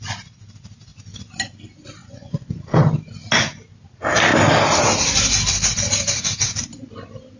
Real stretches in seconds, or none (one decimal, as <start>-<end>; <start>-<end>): 0.0-2.0; 2.8-7.4